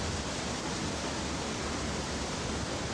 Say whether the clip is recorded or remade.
recorded